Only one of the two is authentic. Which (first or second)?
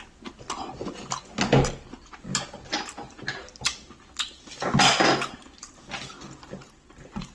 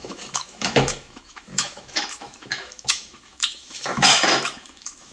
first